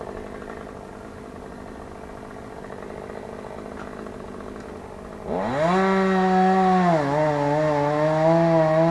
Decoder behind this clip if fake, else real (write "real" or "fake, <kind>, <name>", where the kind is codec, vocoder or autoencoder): real